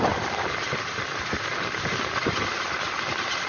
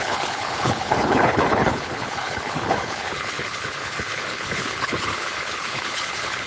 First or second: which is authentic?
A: first